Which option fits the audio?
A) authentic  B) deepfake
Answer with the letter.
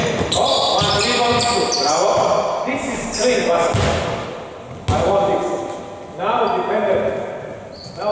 A